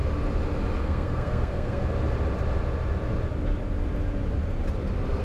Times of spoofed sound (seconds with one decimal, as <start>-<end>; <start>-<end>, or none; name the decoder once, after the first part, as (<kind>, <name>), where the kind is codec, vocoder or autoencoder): 0.8-1.8 (codec, SNAC)